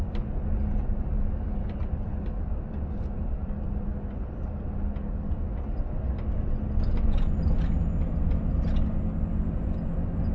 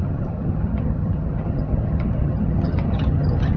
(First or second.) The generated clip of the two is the second